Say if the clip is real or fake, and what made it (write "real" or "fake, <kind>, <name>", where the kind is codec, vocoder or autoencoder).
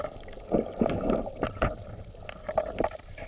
real